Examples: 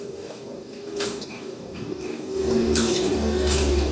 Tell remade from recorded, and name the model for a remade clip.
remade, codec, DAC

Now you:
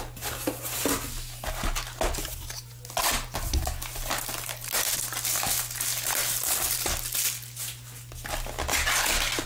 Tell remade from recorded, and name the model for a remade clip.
recorded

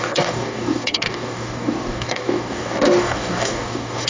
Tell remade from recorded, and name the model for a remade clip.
remade, codec, DAC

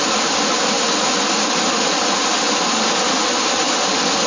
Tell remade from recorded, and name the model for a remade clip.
recorded